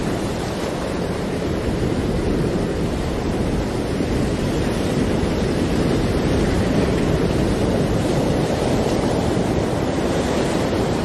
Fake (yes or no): yes